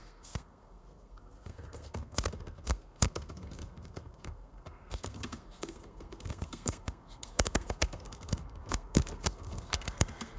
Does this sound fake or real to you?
fake